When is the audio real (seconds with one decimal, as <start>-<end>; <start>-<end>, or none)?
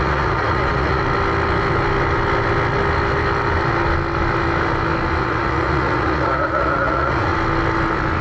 1.0-5.2; 7.3-8.2